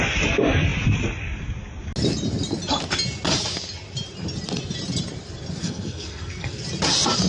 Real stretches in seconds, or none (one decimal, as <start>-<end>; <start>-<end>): 0.0-5.6; 6.6-7.3